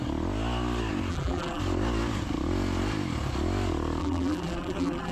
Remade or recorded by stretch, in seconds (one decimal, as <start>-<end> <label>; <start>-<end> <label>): 0.0-1.1 recorded; 1.1-1.6 remade; 1.6-4.0 recorded; 4.0-5.1 remade